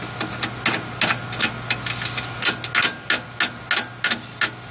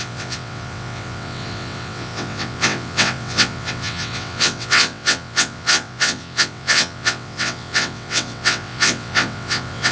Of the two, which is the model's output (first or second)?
second